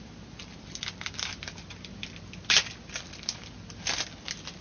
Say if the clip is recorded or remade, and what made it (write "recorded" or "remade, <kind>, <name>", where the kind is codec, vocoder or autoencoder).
recorded